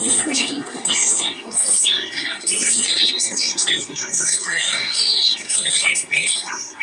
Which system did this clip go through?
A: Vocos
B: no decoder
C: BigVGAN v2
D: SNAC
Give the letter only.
D